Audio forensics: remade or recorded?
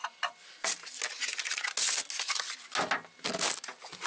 recorded